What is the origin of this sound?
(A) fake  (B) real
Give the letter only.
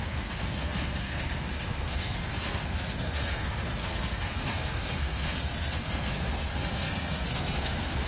A